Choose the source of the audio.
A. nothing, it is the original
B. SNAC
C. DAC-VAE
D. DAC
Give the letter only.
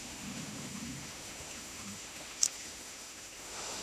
C